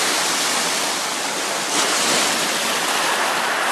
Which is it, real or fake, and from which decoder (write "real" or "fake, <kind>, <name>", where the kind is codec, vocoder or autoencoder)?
real